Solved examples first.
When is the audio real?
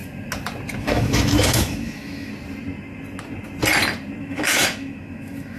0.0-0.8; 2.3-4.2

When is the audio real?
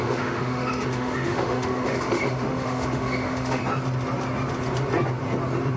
3.6-5.8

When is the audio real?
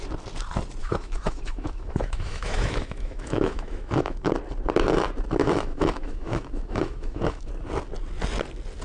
0.0-0.8; 4.3-5.4; 7.5-8.8